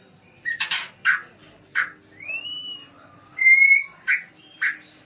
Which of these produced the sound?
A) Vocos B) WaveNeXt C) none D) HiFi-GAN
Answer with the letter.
C